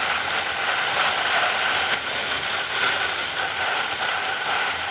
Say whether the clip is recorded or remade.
recorded